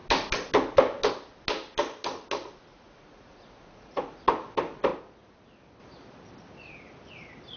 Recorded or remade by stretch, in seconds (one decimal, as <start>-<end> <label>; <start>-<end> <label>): 0.0-2.7 recorded; 2.7-4.2 remade; 4.2-7.6 recorded